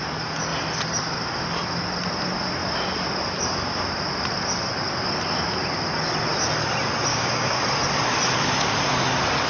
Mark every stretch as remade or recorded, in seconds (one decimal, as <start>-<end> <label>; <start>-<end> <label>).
0.0-7.1 recorded; 7.1-7.6 remade; 7.6-9.5 recorded